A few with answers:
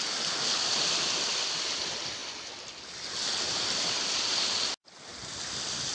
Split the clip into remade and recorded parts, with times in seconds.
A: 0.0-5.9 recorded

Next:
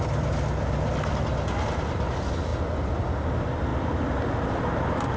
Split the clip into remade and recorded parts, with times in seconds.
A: 0.0-5.2 recorded

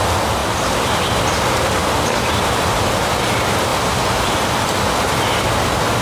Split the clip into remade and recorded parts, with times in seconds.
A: 0.0-1.8 recorded; 1.8-3.2 remade; 3.2-3.7 recorded; 3.7-4.3 remade; 4.3-6.0 recorded

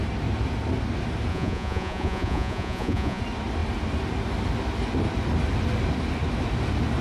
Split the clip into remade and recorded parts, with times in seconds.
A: 0.0-1.3 recorded; 1.3-3.2 remade; 3.2-7.0 recorded

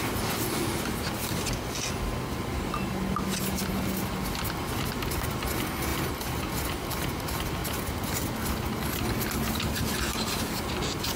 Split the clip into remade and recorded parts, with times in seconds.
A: 0.0-5.9 recorded; 5.9-6.5 remade; 6.5-11.2 recorded

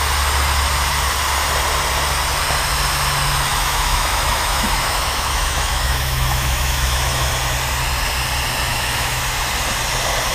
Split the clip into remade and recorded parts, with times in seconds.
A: 0.0-3.5 recorded; 3.5-7.3 remade; 7.3-8.7 recorded; 8.7-9.2 remade; 9.2-10.3 recorded

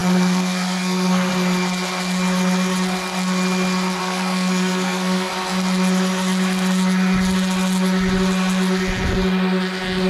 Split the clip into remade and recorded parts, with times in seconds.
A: 0.0-1.3 remade; 1.3-4.0 recorded; 4.0-5.3 remade; 5.3-10.1 recorded